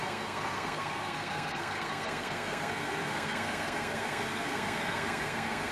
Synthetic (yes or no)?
yes